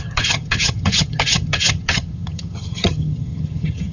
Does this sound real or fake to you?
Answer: fake